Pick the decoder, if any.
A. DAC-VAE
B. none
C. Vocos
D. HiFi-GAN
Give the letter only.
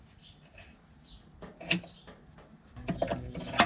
B